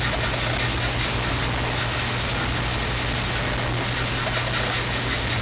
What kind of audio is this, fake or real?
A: real